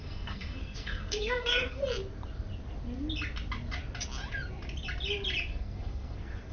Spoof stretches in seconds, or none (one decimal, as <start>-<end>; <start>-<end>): 0.0-1.8; 5.5-6.5